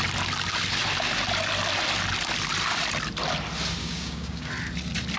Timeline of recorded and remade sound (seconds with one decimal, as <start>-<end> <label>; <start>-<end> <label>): 0.0-3.8 recorded; 3.8-4.5 remade; 4.5-5.2 recorded